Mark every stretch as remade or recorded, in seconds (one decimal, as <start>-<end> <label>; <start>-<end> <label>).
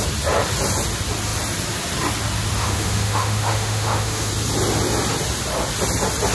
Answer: 0.0-2.6 recorded; 2.6-4.3 remade; 4.3-6.3 recorded